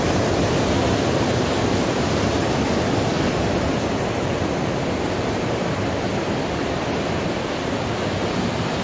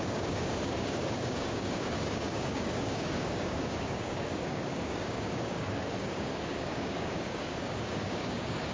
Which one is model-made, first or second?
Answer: second